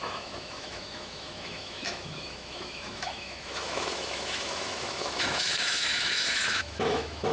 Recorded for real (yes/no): no